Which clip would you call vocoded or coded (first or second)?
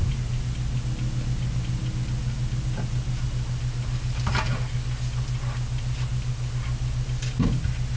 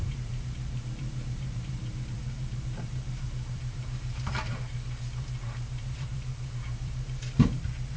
second